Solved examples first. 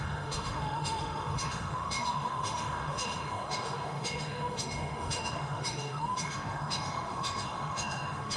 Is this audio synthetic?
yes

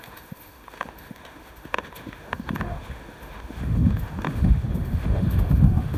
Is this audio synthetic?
yes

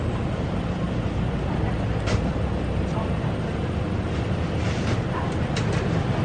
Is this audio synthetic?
no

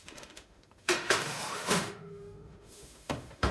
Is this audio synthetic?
yes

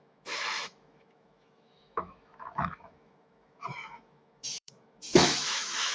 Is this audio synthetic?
yes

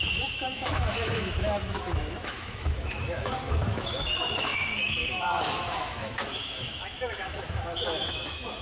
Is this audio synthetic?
yes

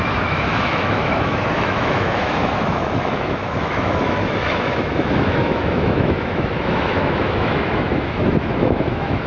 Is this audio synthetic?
yes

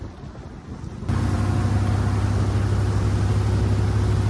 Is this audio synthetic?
no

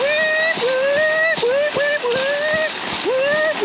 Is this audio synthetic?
no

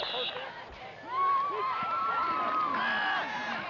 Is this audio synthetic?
no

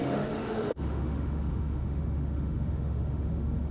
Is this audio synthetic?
yes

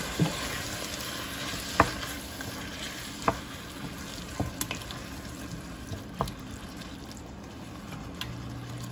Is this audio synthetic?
no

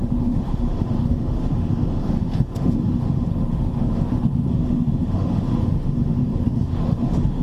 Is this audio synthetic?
yes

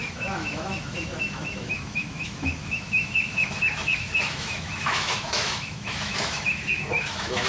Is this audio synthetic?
yes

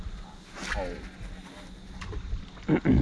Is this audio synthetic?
no